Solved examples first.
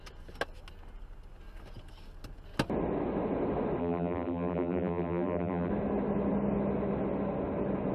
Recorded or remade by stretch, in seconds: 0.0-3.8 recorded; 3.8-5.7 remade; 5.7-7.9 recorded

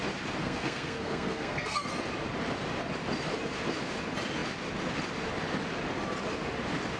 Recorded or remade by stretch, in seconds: 0.0-0.4 recorded; 0.4-1.9 remade; 1.9-7.0 recorded

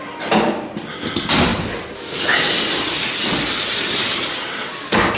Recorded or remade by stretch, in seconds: 0.0-5.2 recorded

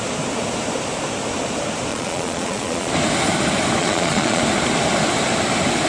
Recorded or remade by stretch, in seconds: 0.0-1.9 recorded; 1.9-2.9 remade; 2.9-3.8 recorded; 3.8-4.4 remade; 4.4-5.9 recorded

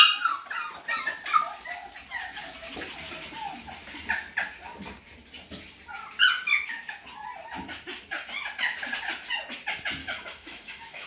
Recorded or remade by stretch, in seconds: 0.0-10.0 recorded; 10.0-11.1 remade

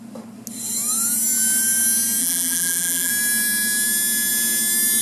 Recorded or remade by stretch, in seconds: 0.0-2.2 recorded; 2.2-3.1 remade; 3.1-5.0 recorded

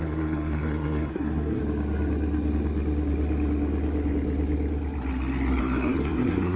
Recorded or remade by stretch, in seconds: 0.0-1.6 remade; 1.6-5.6 recorded; 5.6-6.6 remade